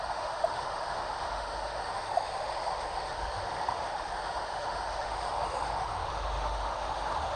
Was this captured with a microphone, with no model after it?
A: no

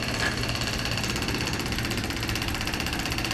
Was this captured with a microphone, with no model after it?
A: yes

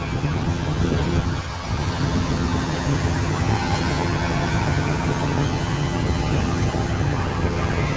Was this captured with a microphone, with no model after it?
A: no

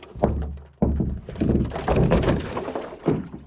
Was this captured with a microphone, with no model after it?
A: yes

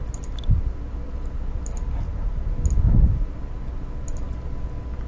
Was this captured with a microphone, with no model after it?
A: yes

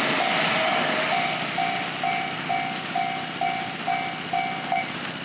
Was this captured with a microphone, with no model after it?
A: yes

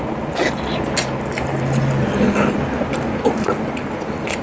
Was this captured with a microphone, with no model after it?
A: yes